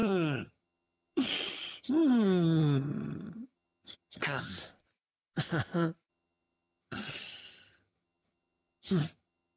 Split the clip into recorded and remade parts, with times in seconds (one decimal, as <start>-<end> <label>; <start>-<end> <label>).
0.0-4.5 remade; 4.5-6.1 recorded; 6.1-9.6 remade